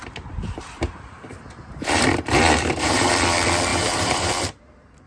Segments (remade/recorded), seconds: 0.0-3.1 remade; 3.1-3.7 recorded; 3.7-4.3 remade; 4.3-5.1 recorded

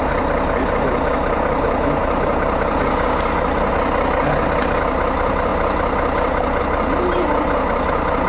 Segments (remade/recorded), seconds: 0.0-8.3 recorded

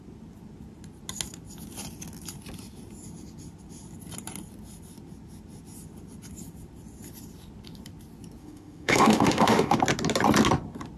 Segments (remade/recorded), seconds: 0.0-8.4 recorded; 8.4-9.8 remade; 9.8-11.0 recorded

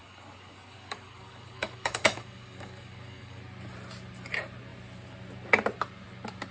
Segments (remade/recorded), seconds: 0.0-3.4 remade; 3.4-6.5 recorded

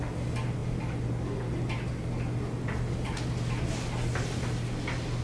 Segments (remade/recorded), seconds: 0.0-5.2 recorded